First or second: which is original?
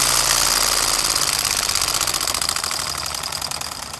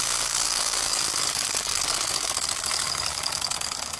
first